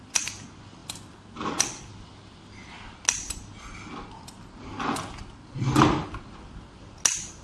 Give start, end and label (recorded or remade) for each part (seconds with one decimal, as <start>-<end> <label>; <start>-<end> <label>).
0.0-7.4 recorded